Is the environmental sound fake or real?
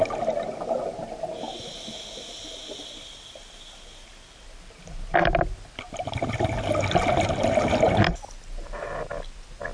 real